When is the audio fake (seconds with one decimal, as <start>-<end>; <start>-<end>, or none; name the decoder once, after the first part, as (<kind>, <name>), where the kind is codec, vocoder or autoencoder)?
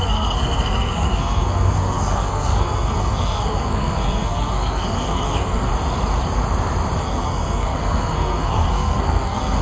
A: 0.0-5.7 (codec, SNAC); 7.0-9.6